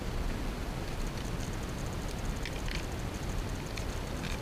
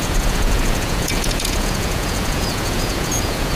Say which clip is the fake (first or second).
second